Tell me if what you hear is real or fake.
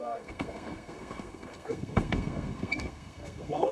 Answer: fake